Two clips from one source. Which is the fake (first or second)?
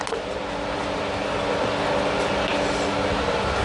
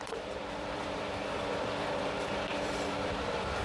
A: second